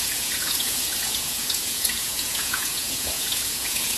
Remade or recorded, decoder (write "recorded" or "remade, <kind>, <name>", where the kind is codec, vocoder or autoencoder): remade, vocoder, Vocos